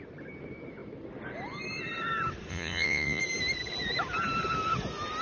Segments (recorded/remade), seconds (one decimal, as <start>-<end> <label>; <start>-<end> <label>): 0.0-2.5 recorded; 2.5-3.2 remade; 3.2-5.2 recorded